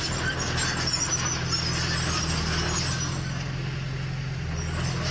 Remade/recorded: recorded